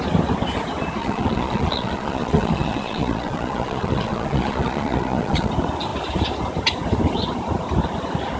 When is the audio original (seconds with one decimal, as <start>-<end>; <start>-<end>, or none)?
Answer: 0.0-1.0; 5.5-8.4